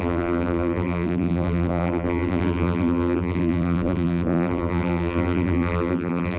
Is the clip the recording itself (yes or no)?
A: no